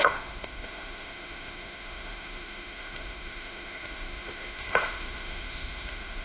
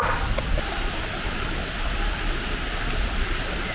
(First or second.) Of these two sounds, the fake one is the first